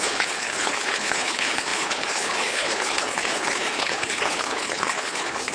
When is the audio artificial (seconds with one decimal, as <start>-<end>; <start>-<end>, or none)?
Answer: 0.0-5.5